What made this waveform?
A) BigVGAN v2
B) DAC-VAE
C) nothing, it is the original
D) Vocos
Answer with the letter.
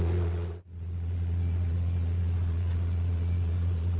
D